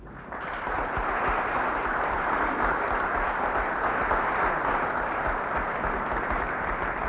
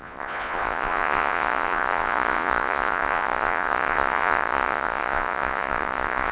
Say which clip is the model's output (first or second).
second